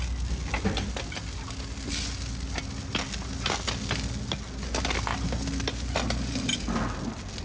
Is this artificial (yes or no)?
no